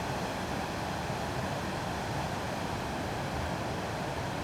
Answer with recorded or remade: recorded